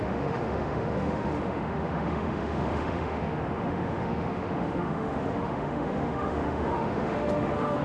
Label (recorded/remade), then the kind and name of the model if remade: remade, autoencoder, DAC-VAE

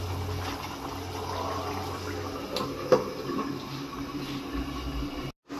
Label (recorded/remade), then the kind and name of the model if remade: recorded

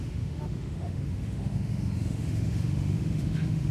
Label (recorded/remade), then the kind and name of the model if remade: remade, autoencoder, DAC-VAE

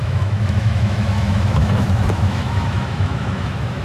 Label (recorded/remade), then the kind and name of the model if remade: remade, autoencoder, DAC-VAE